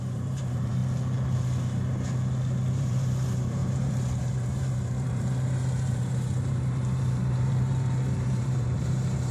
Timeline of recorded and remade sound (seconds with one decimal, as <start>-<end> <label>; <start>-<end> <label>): 0.0-0.8 remade; 0.8-2.7 recorded; 2.7-9.3 remade